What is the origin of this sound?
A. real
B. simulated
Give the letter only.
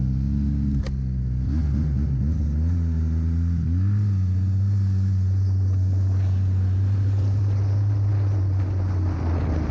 A